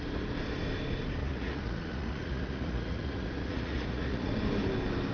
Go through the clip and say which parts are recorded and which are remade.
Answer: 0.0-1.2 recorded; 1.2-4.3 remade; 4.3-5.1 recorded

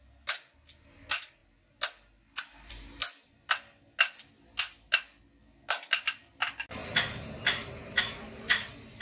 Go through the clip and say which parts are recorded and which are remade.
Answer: 0.0-9.0 recorded